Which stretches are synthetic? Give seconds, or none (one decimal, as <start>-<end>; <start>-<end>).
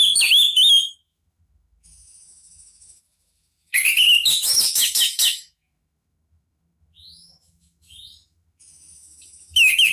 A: 0.0-9.9